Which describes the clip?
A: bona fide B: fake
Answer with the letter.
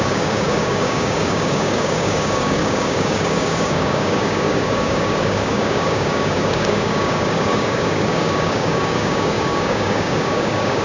B